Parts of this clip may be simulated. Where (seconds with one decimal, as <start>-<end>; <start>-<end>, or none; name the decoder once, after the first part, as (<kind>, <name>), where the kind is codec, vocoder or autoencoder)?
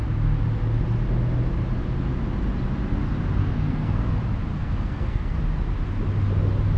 3.4-4.1 (codec, SNAC); 4.5-5.4